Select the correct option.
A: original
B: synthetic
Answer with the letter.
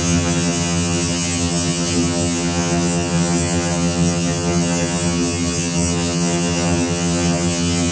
B